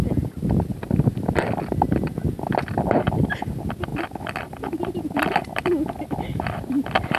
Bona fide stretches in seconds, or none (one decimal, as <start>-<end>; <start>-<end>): 0.0-7.2